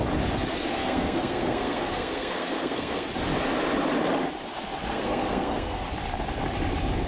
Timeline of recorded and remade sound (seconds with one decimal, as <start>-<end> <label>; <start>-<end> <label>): 0.0-0.7 recorded; 0.7-3.1 remade; 3.1-4.9 recorded; 4.9-5.8 remade; 5.8-7.1 recorded